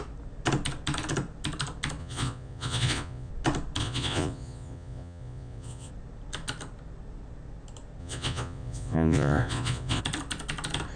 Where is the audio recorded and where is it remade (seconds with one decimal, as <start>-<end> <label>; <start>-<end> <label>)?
0.0-2.0 recorded; 2.0-3.3 remade; 3.3-3.8 recorded; 3.8-5.9 remade; 5.9-8.0 recorded; 8.0-10.0 remade; 10.0-11.0 recorded